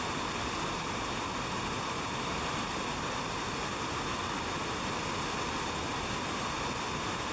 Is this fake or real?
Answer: real